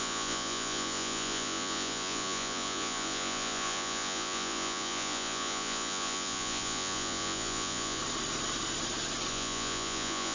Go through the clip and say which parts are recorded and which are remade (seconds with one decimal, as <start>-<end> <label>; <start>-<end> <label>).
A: 0.0-8.0 remade; 8.0-9.3 recorded; 9.3-10.3 remade